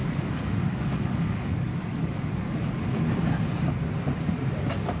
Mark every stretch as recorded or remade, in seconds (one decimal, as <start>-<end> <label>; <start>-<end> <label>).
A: 0.0-3.0 remade; 3.0-5.0 recorded